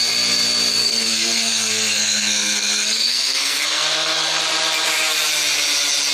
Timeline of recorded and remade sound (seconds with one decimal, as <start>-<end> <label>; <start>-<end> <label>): 0.0-0.7 recorded; 0.7-4.4 remade; 4.4-6.1 recorded